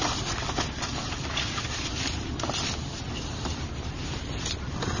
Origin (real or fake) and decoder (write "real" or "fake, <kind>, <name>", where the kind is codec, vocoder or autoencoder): real